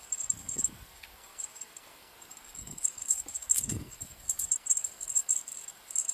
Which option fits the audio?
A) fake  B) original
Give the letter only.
A